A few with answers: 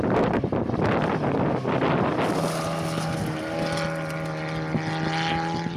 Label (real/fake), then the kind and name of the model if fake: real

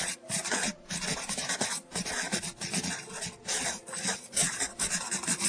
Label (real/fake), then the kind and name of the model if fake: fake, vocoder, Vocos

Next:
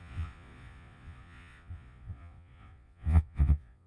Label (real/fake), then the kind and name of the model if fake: fake, vocoder, Vocos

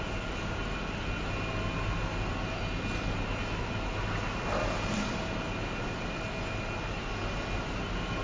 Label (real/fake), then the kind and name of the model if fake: real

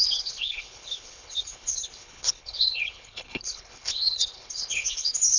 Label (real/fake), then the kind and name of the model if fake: fake, codec, HILCodec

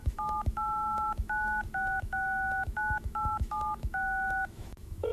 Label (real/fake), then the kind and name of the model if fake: fake, autoencoder, DAC-VAE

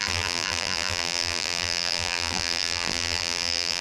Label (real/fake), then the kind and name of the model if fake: fake, vocoder, BigVGAN v2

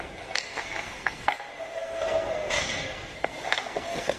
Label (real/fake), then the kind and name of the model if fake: fake, codec, SNAC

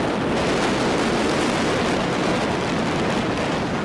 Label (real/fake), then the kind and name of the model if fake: real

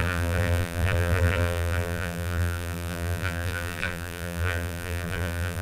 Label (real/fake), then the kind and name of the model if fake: fake, vocoder, BigVGAN v2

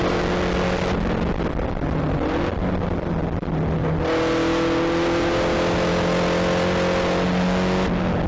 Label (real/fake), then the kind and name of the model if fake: real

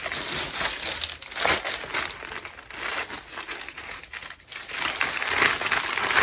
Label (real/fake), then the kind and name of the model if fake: real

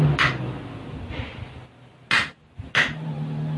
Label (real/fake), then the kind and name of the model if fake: real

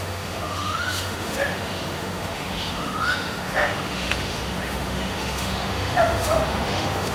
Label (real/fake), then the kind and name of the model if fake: fake, autoencoder, DAC-VAE